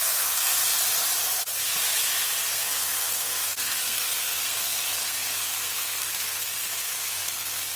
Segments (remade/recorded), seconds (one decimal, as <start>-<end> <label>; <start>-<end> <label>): 0.0-0.6 remade; 0.6-2.5 recorded; 2.5-7.8 remade

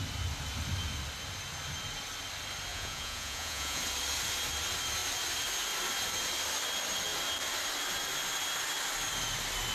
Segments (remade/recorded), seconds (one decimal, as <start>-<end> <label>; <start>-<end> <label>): 0.0-2.7 recorded; 2.7-3.8 remade; 3.8-9.7 recorded

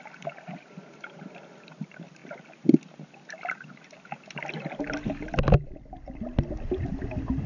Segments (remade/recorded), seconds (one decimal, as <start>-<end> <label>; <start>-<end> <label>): 0.0-7.5 recorded